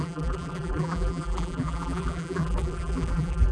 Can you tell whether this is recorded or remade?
remade